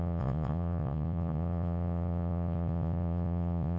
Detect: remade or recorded remade